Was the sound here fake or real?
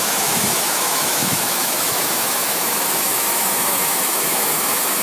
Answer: fake